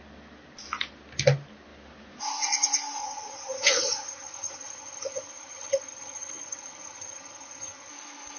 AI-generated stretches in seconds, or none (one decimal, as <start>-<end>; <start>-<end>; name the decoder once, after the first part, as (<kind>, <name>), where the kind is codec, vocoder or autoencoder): 3.0-7.9 (vocoder, HiFi-GAN)